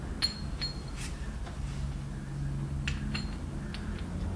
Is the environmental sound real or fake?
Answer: real